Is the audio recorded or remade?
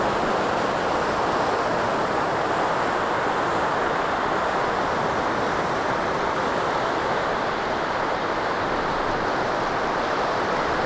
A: recorded